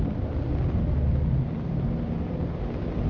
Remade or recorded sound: recorded